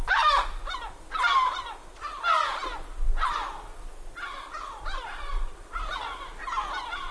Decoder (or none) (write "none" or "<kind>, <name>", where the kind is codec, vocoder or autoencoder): none